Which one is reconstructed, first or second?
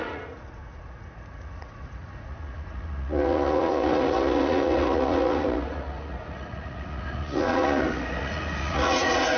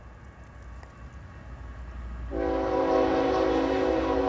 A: first